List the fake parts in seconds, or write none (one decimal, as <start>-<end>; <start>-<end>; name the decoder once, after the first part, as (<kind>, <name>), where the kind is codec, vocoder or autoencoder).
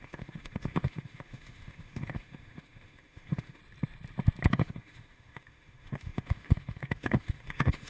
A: 0.0-3.6 (autoencoder, DAC-VAE); 4.5-7.9